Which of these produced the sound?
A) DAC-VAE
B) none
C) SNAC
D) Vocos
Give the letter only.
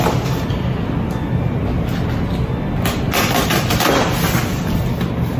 B